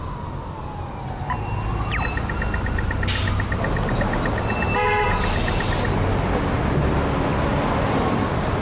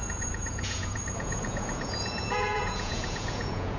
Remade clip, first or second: second